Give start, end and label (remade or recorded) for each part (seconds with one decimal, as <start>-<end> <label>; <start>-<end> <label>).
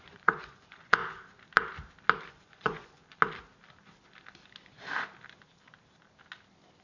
0.0-1.0 remade; 1.0-2.3 recorded; 2.3-3.0 remade; 3.0-6.8 recorded